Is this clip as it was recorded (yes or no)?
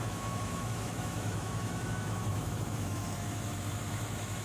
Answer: no